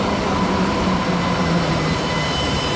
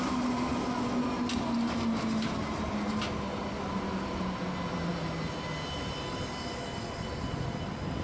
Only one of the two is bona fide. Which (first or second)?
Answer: second